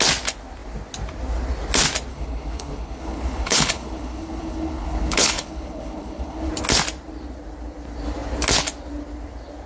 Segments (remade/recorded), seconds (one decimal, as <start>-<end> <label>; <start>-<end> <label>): 0.0-2.1 recorded; 2.1-6.5 remade; 6.5-9.7 recorded